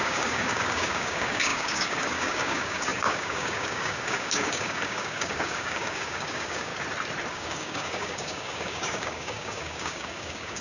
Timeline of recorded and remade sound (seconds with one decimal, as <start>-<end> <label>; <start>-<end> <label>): 0.0-6.7 remade; 6.7-7.3 recorded; 7.3-10.6 remade